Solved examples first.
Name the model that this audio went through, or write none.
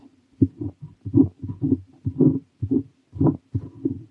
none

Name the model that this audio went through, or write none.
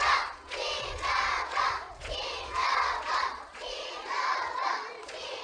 vocoder, Vocos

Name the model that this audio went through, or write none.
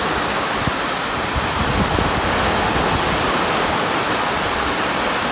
none